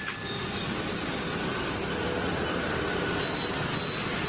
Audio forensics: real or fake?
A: real